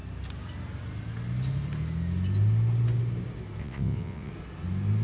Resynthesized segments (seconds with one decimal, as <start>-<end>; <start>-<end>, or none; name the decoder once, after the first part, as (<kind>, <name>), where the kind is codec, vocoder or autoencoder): 3.6-4.3 (vocoder, WaveNeXt)